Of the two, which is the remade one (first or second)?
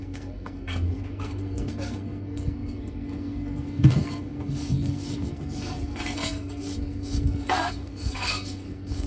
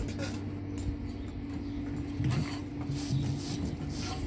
first